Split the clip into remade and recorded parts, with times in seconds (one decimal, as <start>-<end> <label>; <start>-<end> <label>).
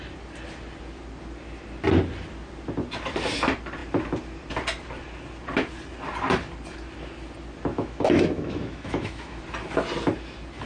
0.0-7.7 recorded; 7.7-9.4 remade; 9.4-10.7 recorded